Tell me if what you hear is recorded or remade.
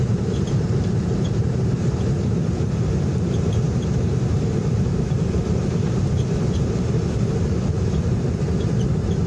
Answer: remade